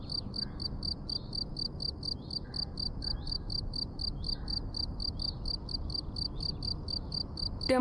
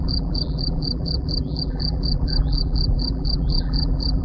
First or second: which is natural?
first